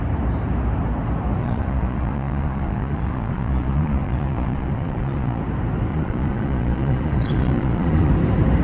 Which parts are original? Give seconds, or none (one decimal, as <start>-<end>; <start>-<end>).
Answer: 0.0-1.4; 5.4-5.9; 8.1-8.6